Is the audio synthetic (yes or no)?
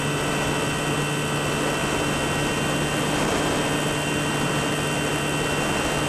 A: no